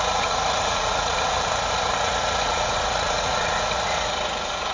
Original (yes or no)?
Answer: no